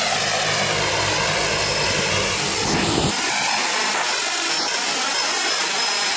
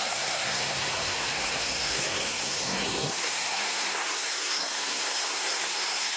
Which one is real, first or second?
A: first